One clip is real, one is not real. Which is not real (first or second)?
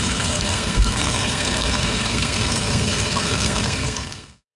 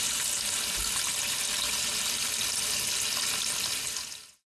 first